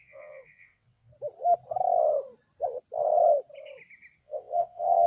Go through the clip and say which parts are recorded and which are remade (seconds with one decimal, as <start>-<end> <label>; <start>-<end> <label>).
0.0-1.1 remade; 1.1-4.2 recorded; 4.2-5.1 remade